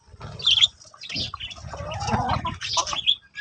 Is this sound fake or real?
real